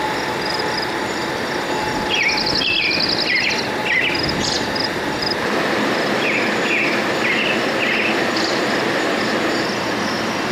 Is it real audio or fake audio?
real